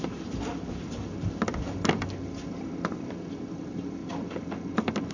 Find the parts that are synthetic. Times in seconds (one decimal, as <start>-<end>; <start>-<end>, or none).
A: 0.0-0.5; 3.6-4.0